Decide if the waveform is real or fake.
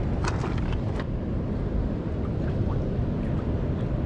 real